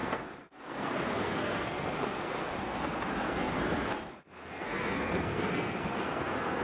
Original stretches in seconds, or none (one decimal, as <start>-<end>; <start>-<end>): none